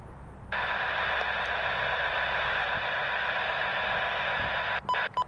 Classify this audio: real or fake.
real